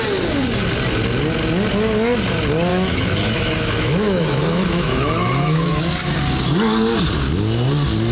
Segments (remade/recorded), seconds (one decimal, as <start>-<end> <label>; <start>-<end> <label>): 0.0-2.7 recorded; 2.7-5.8 remade; 5.8-8.1 recorded